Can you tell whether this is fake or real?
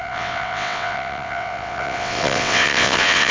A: fake